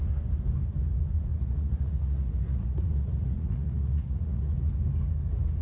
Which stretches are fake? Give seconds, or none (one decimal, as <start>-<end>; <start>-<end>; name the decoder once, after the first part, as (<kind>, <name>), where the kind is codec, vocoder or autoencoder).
1.3-4.7 (vocoder, Vocos)